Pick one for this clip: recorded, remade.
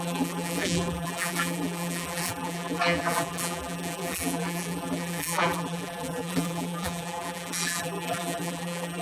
remade